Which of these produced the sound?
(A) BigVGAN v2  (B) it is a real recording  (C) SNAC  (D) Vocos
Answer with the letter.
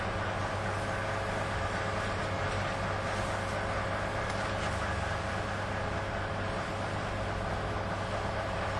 B